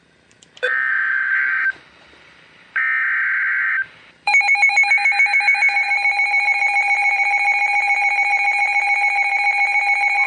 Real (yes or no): no